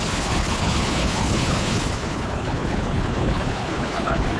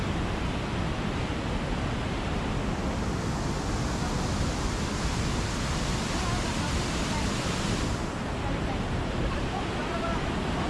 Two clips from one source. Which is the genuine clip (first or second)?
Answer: second